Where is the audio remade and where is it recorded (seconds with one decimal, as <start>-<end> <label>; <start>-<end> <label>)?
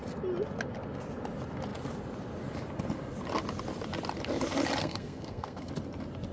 0.0-4.8 recorded; 4.8-5.7 remade; 5.7-6.3 recorded